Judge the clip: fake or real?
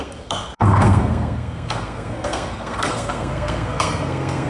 fake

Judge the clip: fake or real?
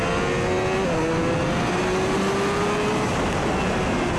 real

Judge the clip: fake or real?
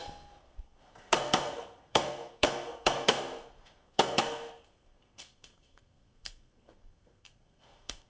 fake